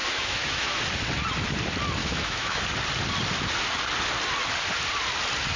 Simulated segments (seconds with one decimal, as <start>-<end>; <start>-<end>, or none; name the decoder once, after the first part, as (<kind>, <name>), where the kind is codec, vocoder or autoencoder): 0.0-0.8 (autoencoder, DAC-VAE); 2.0-2.6

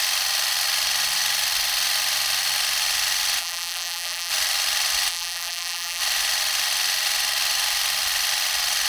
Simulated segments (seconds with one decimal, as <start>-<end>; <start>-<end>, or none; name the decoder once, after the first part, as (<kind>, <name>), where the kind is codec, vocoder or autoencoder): 3.4-4.3 (vocoder, BigVGAN v2); 5.1-6.0

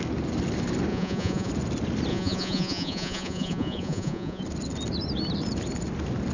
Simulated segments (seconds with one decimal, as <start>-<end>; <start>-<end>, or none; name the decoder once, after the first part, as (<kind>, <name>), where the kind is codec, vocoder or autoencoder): 0.9-1.5 (vocoder, Vocos); 2.1-4.4